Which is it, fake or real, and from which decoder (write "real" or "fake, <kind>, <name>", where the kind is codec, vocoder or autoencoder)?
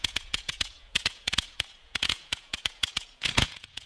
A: fake, vocoder, Vocos